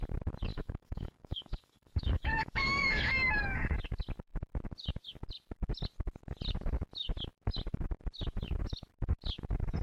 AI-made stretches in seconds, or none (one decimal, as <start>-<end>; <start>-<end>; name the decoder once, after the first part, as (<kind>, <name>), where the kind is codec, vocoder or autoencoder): 0.5-3.7 (codec, DAC)